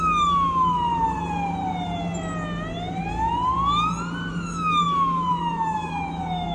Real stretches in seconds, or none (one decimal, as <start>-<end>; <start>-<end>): 0.9-4.3

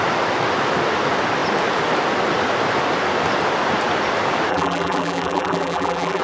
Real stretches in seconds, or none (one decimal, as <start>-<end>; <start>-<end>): 0.0-4.5

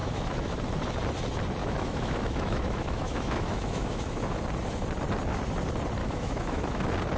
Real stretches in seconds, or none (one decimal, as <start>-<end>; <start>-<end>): 0.6-1.6; 4.4-6.0; 6.8-7.2

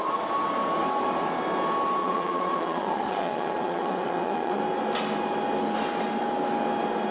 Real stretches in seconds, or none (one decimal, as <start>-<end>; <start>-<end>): 0.0-2.0; 4.6-7.1

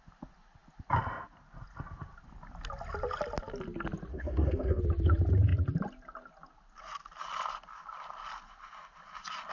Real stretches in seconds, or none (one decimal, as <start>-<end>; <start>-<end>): 0.0-4.1; 4.8-9.5